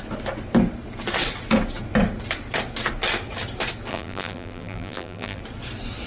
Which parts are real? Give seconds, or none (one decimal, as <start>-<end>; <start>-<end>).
0.0-3.9; 5.4-6.1